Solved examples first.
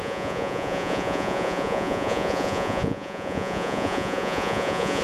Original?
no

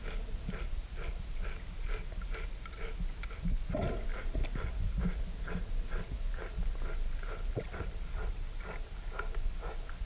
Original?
yes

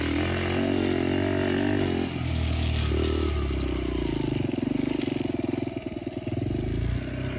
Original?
yes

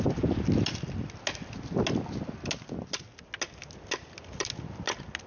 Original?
yes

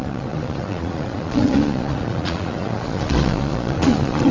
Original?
no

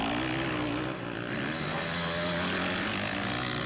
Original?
yes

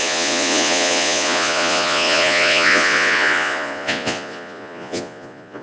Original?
no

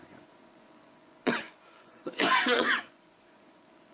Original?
no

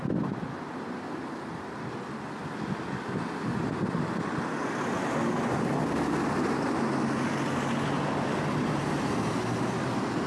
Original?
yes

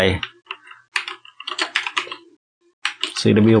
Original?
yes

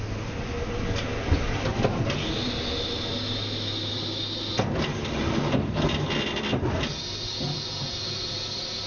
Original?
yes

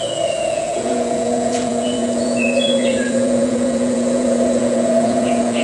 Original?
no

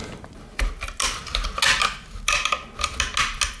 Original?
yes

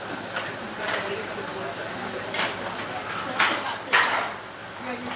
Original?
yes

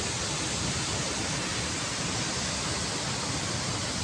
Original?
yes